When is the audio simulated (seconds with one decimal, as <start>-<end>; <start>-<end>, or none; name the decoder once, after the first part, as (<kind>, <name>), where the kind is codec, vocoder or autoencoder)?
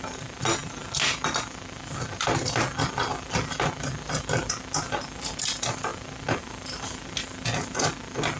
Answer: none